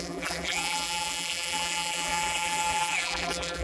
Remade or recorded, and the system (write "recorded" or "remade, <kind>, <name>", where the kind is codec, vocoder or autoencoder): remade, vocoder, BigVGAN v2